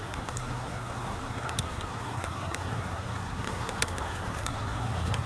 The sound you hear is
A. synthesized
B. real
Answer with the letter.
A